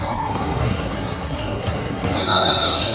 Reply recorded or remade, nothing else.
remade